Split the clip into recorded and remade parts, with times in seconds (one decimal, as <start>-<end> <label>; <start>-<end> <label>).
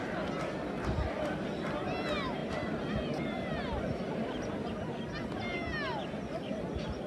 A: 0.0-7.1 recorded